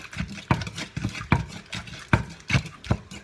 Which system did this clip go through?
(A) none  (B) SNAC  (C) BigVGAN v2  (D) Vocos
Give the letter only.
A